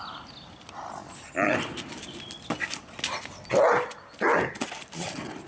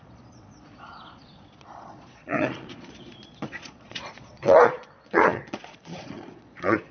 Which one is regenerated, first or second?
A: second